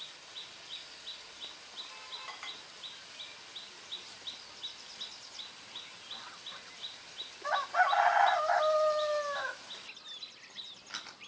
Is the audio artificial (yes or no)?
no